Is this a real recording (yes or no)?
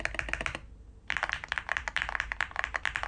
yes